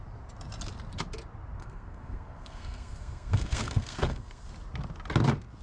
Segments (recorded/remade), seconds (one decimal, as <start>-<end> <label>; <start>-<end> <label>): 0.0-1.6 recorded; 1.6-4.5 remade; 4.5-5.6 recorded